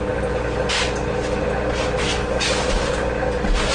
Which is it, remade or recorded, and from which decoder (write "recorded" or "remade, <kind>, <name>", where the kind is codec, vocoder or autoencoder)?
recorded